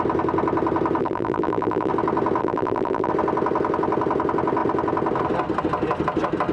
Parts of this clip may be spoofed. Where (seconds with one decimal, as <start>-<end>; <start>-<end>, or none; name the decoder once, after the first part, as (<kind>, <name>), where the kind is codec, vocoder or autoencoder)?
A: 1.0-1.9 (vocoder, BigVGAN v2); 2.4-3.1